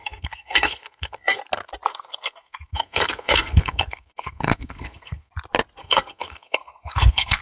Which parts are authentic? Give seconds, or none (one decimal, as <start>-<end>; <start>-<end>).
1.4-1.9; 5.3-5.8